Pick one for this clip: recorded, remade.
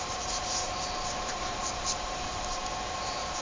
remade